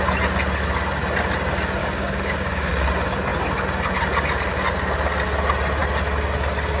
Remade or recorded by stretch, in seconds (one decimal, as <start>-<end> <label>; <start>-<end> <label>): 0.0-1.8 recorded; 1.8-2.7 remade; 2.7-6.8 recorded